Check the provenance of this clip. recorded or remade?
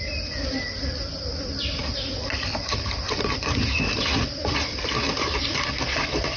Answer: recorded